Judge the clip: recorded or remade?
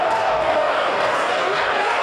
remade